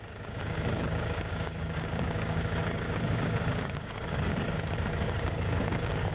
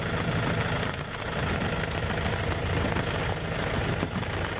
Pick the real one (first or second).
second